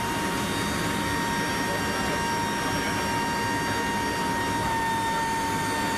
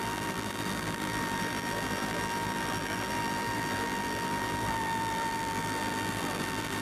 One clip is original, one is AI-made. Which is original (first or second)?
first